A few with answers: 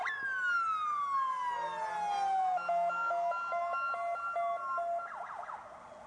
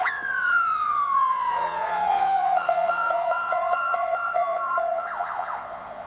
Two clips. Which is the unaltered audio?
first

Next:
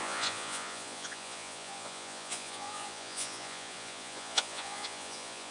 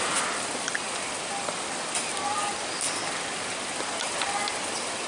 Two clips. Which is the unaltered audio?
second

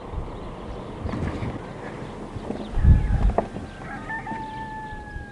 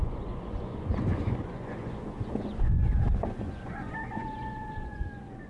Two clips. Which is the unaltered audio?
first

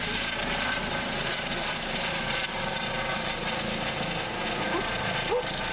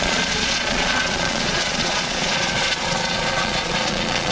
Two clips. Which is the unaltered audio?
first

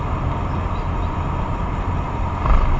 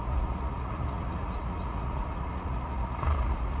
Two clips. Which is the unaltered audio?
first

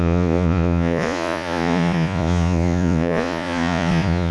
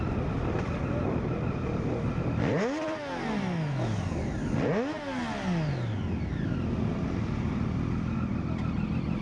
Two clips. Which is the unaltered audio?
second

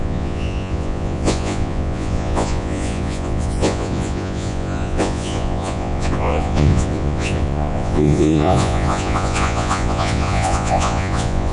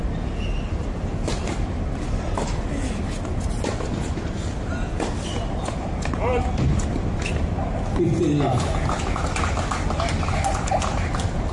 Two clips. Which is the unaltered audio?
second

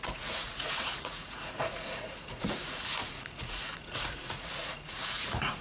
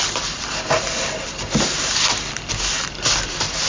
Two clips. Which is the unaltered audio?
second